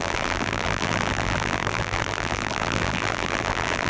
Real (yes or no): no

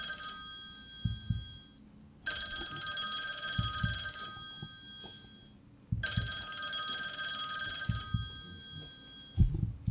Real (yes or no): yes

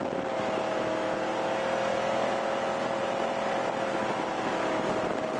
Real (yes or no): yes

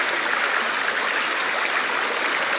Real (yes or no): yes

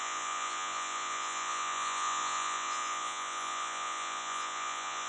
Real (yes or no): no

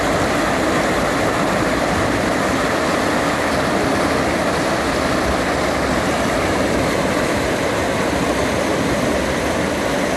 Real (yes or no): yes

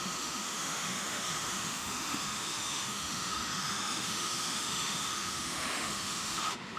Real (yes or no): no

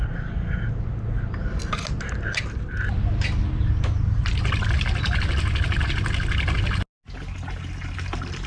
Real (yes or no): yes